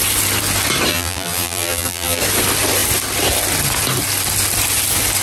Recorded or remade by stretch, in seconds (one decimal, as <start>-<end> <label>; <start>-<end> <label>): 0.0-0.9 recorded; 0.9-2.2 remade; 2.2-5.2 recorded